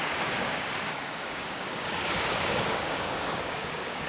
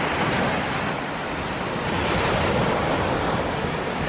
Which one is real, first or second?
second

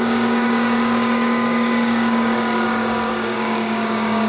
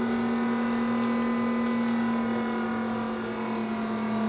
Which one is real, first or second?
second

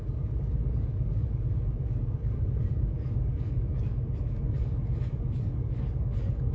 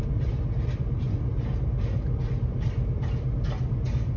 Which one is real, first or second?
second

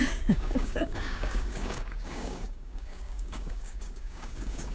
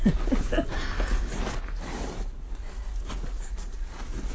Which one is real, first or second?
second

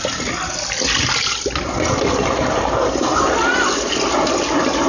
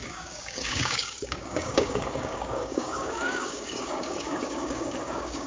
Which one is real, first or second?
first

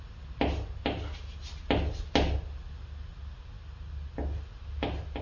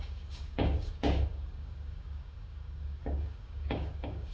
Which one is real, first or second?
first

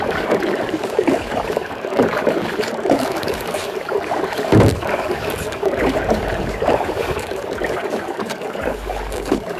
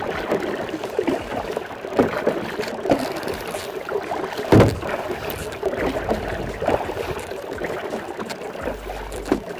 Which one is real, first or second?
second